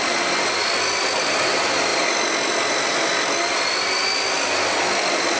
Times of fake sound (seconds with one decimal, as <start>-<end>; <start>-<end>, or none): none